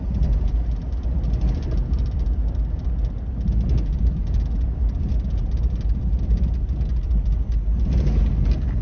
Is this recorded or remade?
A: recorded